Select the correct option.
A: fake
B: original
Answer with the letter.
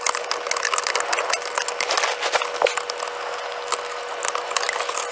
B